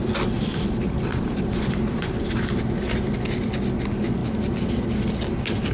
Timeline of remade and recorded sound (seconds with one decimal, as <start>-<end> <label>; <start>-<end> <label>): 0.0-1.1 recorded; 1.1-2.6 remade; 2.6-5.7 recorded